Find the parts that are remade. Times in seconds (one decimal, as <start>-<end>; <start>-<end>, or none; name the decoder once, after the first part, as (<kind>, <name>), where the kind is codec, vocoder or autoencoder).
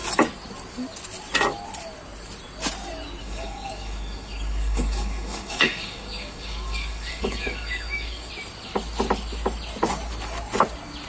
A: 3.2-8.3 (codec, DAC)